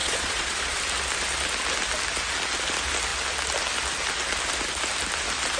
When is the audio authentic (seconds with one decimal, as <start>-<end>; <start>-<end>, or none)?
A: 0.8-5.6